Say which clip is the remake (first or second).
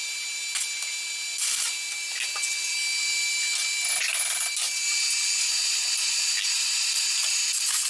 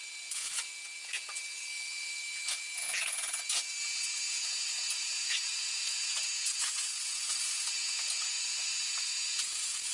second